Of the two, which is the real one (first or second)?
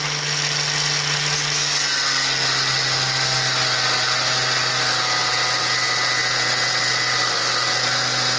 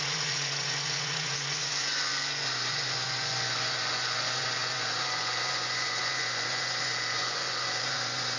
first